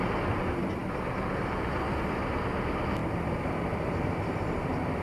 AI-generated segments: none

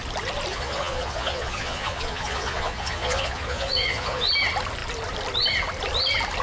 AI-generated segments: 0.5-4.3

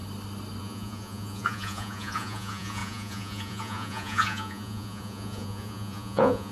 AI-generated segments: 0.6-6.5

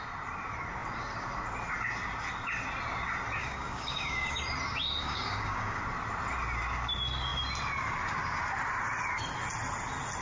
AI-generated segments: 3.4-4.4; 5.0-5.8

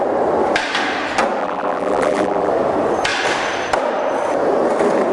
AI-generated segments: 1.4-2.5

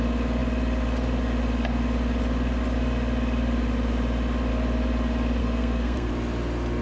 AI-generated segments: 5.4-6.1

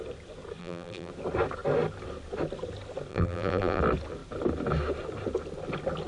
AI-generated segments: 0.6-1.1; 3.1-3.8